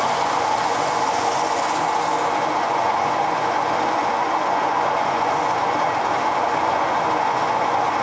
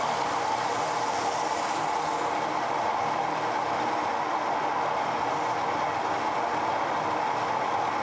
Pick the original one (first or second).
second